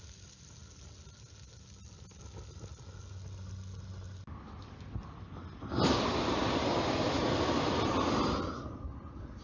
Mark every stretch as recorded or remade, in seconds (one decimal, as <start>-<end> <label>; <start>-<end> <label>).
0.0-9.4 recorded